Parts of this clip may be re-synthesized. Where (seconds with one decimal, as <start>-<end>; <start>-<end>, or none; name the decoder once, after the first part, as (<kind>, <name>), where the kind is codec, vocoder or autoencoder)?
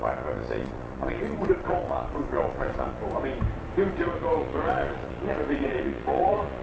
0.0-3.0 (vocoder, Vocos); 3.9-6.6